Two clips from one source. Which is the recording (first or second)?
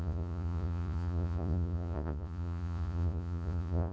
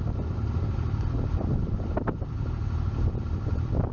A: second